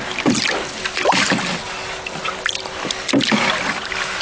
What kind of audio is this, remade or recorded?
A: recorded